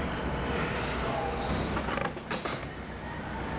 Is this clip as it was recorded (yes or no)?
yes